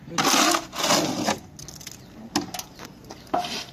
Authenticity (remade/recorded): recorded